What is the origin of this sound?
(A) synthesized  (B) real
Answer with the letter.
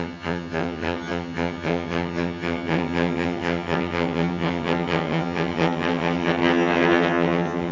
A